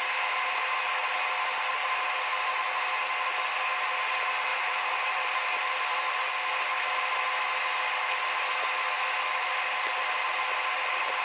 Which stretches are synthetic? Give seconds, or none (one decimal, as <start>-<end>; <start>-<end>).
4.5-6.1